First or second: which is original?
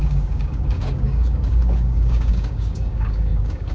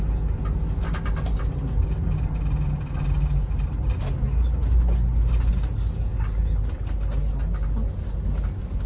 second